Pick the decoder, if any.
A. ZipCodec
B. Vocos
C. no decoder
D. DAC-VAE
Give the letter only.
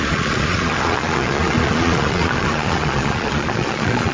B